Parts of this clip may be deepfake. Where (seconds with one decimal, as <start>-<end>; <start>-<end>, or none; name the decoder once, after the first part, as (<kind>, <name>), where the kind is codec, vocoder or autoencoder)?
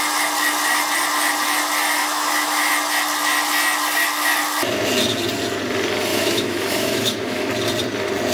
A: 2.0-2.7 (autoencoder, DAC-VAE); 6.1-7.5